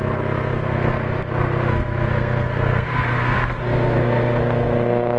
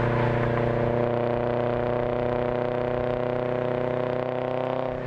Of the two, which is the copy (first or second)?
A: first